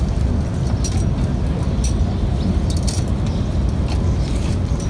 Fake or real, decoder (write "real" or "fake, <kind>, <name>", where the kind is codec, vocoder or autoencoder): real